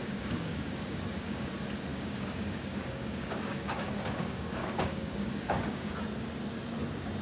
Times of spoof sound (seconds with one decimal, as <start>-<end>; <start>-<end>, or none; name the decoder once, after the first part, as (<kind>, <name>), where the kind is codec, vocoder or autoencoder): 0.0-1.5 (codec, DAC); 1.9-5.9